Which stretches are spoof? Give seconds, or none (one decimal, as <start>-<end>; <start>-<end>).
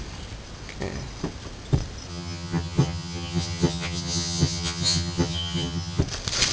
2.1-6.0